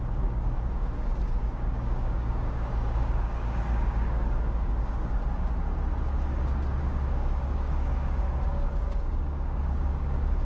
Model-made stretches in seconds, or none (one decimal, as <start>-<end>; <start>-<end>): 0.0-5.2; 6.8-10.4